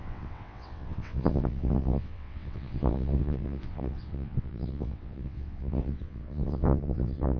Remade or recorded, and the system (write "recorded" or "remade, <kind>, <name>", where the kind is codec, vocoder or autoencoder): remade, vocoder, WaveNeXt